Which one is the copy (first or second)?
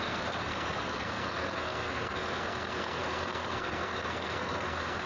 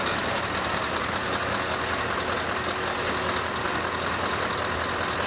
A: first